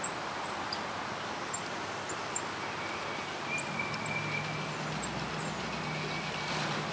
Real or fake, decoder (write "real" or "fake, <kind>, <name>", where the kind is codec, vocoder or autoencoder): real